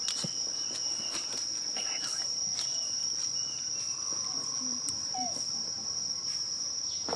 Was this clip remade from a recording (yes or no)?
no